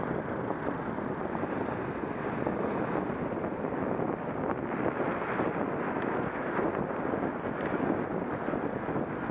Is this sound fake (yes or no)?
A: no